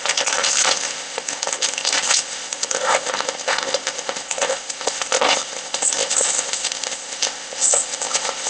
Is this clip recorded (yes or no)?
no